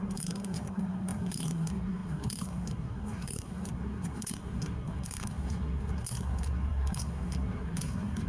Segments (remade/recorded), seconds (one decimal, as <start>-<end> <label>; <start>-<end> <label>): 0.0-8.3 remade